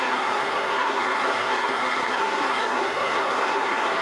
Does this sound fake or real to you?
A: fake